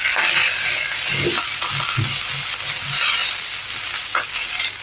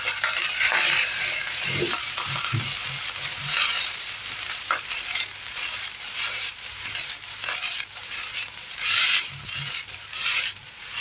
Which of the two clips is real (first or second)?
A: first